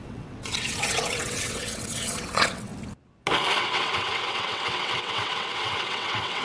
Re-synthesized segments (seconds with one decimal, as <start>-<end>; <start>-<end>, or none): 0.0-2.7; 3.6-6.4